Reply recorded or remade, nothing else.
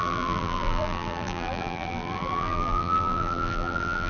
remade